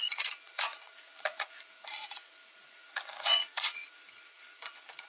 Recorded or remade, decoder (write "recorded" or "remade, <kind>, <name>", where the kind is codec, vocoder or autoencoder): remade, vocoder, Vocos